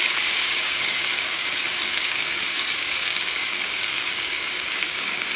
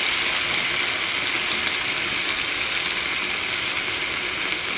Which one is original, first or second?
second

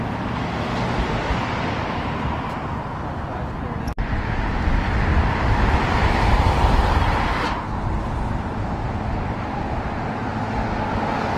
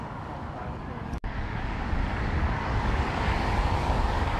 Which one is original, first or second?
first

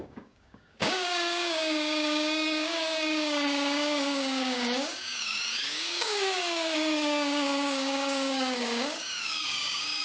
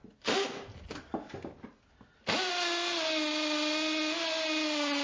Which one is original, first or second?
second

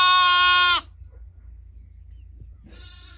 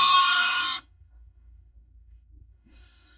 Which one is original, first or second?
first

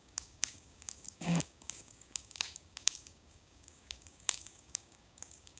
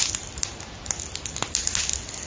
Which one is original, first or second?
second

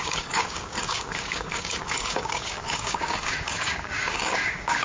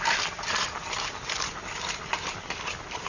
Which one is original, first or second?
second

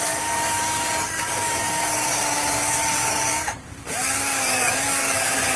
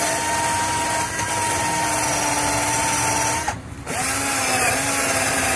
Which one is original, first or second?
second